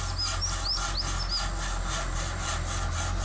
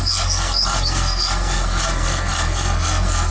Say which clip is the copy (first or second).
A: second